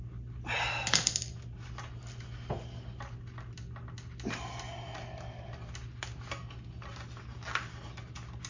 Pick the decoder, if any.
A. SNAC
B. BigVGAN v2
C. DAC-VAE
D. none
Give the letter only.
D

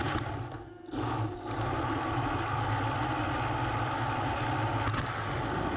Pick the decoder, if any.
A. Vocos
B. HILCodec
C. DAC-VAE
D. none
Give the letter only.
D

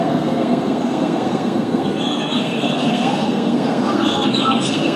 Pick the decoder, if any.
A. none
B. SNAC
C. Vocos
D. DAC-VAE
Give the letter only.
B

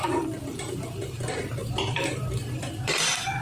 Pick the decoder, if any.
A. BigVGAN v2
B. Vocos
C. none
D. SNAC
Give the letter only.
A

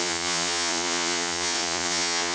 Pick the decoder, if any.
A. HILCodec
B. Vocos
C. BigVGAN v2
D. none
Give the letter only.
B